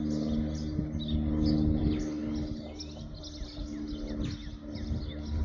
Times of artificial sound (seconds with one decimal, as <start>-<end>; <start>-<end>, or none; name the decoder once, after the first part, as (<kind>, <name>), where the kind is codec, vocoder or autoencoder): none